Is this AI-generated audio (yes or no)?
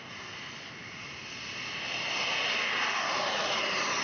no